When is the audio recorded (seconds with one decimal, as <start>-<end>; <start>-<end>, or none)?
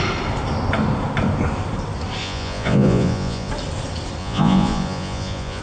0.0-2.2; 3.5-4.2